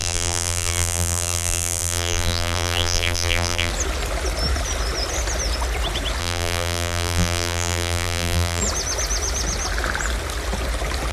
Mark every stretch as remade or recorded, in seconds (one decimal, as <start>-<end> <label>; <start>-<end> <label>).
0.0-3.7 remade; 3.7-6.2 recorded; 6.2-8.6 remade; 8.6-11.1 recorded

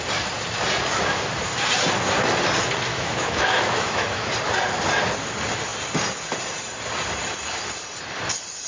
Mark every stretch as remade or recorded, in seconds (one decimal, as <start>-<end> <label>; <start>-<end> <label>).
0.0-2.9 recorded; 2.9-4.3 remade; 4.3-8.7 recorded

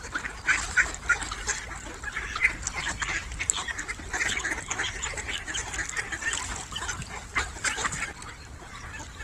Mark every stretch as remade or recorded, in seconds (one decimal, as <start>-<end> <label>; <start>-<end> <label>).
0.0-9.2 recorded

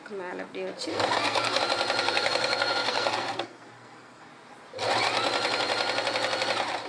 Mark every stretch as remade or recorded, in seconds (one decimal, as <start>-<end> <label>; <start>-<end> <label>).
0.0-0.9 recorded; 0.9-1.6 remade; 1.6-2.0 recorded; 2.0-4.3 remade; 4.3-6.9 recorded

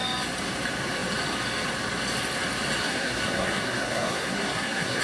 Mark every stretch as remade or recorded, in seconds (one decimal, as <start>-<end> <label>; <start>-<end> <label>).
0.0-2.8 recorded; 2.8-5.0 remade

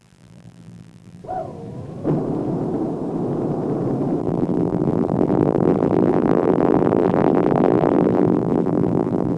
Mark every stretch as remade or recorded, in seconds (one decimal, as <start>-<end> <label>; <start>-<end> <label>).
0.0-1.2 remade; 1.2-4.2 recorded; 4.2-9.4 remade

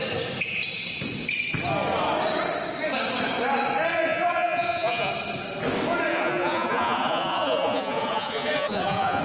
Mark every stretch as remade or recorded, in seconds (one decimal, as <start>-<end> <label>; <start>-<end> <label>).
0.0-3.9 recorded; 3.9-5.1 remade; 5.1-6.1 recorded; 6.1-9.2 remade